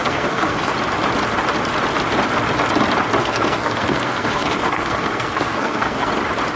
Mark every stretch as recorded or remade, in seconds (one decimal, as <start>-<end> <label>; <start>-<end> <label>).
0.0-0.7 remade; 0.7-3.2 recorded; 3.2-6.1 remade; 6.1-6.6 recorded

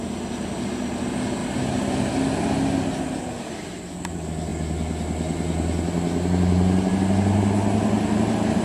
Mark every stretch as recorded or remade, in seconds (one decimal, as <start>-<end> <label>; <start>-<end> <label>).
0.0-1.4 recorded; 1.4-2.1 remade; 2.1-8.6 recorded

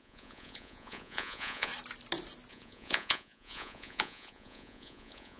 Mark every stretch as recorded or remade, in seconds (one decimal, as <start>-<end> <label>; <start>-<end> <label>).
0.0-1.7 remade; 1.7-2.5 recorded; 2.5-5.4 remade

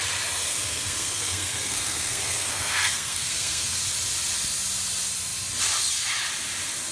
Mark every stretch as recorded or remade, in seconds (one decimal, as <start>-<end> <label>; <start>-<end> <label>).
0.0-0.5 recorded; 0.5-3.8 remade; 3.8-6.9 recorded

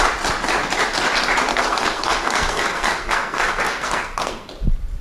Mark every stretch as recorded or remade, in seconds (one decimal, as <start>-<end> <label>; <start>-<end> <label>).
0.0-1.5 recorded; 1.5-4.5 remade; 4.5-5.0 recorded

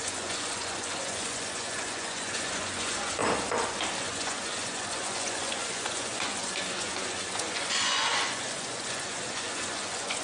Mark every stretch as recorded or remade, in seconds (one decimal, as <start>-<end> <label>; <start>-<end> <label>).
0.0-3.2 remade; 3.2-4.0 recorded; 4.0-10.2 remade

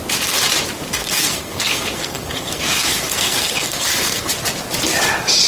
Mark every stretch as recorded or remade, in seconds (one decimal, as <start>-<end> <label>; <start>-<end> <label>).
0.0-1.0 recorded; 1.0-4.3 remade; 4.3-5.5 recorded

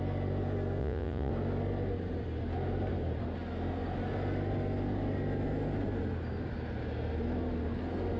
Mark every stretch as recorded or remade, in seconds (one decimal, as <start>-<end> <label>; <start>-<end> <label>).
0.0-0.8 recorded; 0.8-1.3 remade; 1.3-8.2 recorded